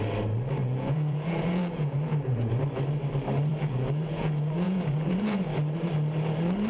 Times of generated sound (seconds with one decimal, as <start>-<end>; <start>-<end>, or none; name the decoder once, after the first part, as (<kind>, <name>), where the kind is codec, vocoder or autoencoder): 0.6-2.5 (vocoder, Vocos); 3.5-5.4